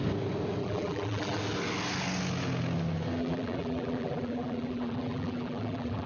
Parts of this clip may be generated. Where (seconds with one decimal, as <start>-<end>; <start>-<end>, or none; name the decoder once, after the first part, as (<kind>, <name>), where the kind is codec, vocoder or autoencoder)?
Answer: 0.6-1.4 (vocoder, BigVGAN v2); 3.2-6.1